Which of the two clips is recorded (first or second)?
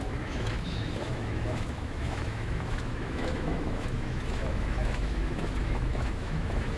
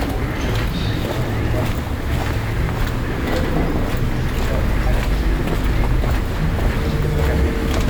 second